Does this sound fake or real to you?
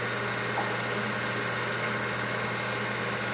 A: real